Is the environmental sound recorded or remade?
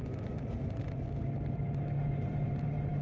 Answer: recorded